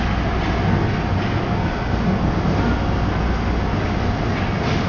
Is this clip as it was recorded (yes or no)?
yes